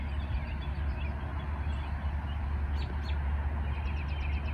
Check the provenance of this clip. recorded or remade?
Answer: recorded